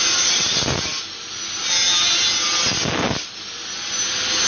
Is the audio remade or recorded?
recorded